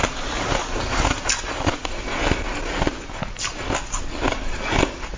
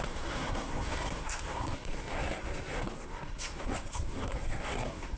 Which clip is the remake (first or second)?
second